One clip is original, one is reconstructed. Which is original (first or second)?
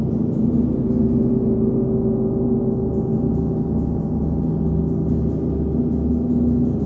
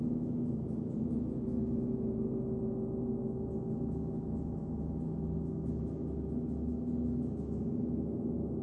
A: first